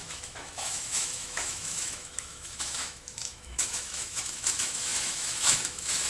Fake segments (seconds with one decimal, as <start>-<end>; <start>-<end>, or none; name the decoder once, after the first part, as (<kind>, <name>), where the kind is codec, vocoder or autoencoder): 0.0-6.1 (autoencoder, DAC-VAE)